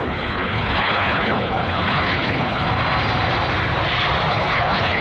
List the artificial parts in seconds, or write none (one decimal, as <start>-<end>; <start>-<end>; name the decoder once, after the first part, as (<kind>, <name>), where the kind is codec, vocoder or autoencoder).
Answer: 0.0-2.6 (codec, HILCodec); 4.3-5.0